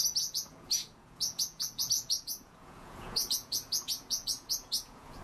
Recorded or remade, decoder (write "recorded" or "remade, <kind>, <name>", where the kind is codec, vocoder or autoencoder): remade, vocoder, Vocos